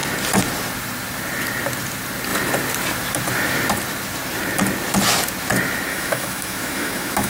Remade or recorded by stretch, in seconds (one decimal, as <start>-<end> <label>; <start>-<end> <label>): 0.0-5.9 recorded; 5.9-7.3 remade